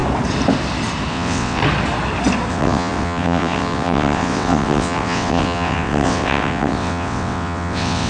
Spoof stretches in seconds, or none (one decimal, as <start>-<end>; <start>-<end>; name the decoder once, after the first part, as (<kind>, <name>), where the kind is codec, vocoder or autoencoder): 1.1-1.6 (vocoder, WaveNeXt); 2.5-8.1